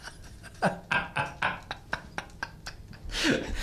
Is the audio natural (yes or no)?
yes